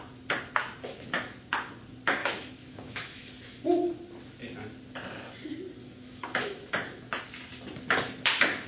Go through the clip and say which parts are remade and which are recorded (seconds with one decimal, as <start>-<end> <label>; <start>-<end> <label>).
0.0-2.2 recorded; 2.2-3.3 remade; 3.3-5.8 recorded; 5.8-6.7 remade; 6.7-8.7 recorded